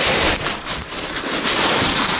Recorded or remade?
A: remade